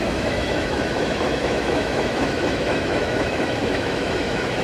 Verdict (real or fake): fake